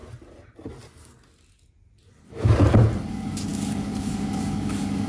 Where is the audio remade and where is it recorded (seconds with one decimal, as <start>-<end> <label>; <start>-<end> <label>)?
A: 0.0-3.1 recorded; 3.1-5.1 remade

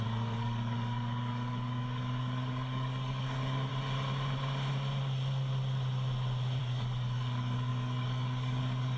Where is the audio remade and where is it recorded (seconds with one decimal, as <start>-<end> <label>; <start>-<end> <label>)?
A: 0.0-3.7 remade; 3.7-6.6 recorded; 6.6-9.0 remade

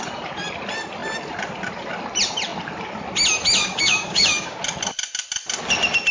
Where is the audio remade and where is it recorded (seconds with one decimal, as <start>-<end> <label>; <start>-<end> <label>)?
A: 0.0-3.6 recorded; 3.6-4.6 remade; 4.6-6.1 recorded